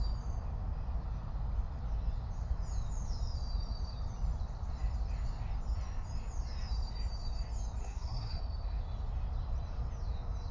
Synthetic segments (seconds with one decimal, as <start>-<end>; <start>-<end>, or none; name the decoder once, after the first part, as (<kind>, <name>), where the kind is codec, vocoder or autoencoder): 7.8-8.4 (codec, SNAC)